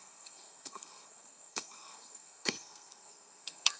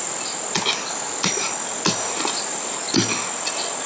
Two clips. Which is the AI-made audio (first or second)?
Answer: first